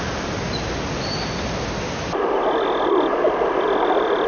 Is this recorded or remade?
recorded